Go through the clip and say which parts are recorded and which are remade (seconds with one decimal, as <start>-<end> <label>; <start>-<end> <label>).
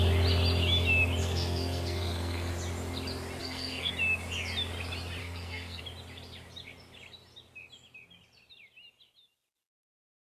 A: 0.0-1.2 recorded; 1.2-2.5 remade; 2.5-3.4 recorded; 3.4-3.9 remade; 3.9-5.2 recorded; 5.2-5.8 remade; 5.8-10.2 recorded